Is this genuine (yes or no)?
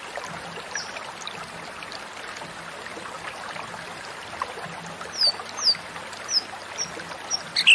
yes